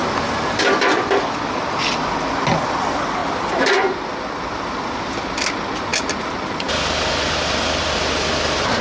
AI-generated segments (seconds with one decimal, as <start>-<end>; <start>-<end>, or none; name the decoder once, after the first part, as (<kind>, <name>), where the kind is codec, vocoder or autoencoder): none